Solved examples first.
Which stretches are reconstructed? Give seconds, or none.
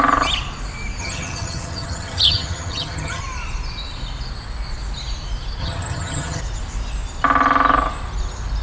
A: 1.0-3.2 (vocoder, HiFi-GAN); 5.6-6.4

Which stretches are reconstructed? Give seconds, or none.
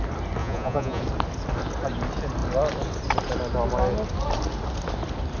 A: 0.4-1.0 (vocoder, Vocos)